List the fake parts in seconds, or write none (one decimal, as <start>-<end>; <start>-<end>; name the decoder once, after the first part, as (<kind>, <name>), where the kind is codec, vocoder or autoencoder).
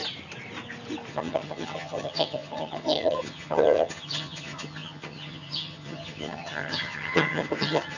1.1-8.0 (vocoder, HiFi-GAN)